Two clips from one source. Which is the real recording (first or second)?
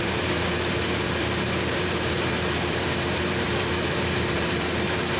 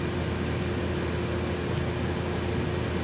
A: second